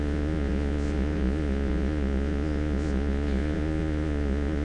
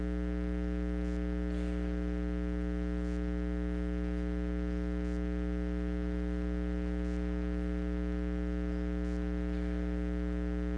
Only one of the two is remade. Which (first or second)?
first